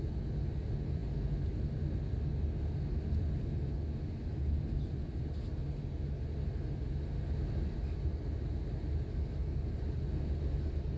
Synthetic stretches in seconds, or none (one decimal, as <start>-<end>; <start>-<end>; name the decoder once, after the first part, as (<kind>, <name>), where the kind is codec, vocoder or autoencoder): none